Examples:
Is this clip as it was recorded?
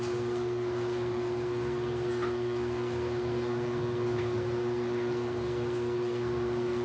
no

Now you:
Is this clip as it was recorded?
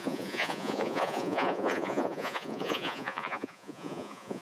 no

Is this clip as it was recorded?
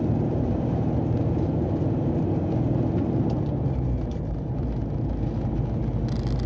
yes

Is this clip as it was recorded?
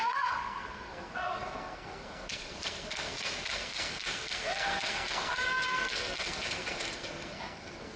no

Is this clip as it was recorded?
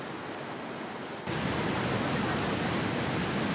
yes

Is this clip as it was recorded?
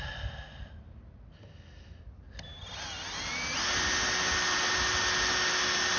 yes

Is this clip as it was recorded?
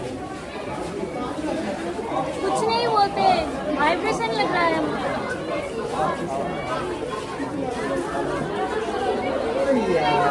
yes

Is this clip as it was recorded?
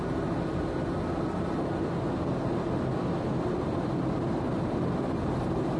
yes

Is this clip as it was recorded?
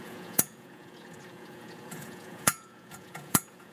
no